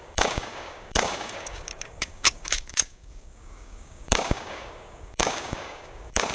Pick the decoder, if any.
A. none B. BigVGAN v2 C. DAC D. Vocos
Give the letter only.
C